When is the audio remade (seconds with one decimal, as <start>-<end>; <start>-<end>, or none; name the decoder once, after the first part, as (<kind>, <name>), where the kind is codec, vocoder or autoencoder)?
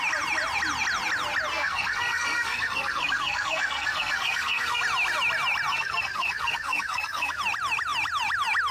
1.5-4.8 (codec, SNAC); 5.7-7.4